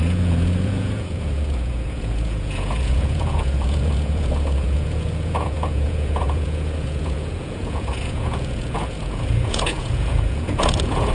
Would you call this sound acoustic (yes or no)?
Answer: no